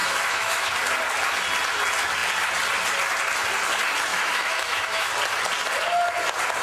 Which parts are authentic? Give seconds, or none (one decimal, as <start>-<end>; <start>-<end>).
0.7-4.1; 5.1-6.6